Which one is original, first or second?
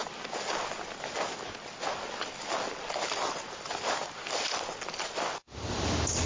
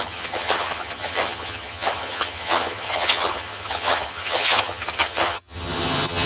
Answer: first